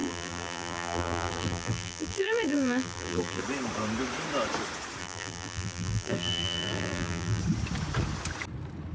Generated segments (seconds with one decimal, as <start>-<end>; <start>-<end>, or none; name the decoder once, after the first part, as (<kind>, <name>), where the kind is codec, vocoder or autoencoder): 0.0-3.4 (vocoder, BigVGAN v2); 5.0-7.4